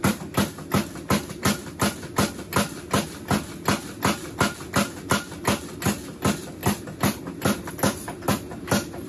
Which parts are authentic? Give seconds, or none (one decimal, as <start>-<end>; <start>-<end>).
0.0-9.1